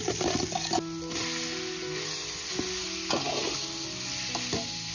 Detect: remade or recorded recorded